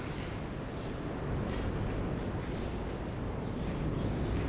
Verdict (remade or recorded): recorded